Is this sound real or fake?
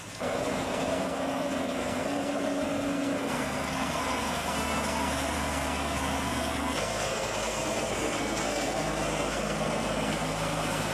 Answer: fake